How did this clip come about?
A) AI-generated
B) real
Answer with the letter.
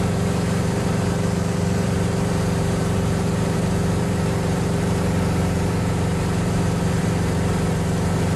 A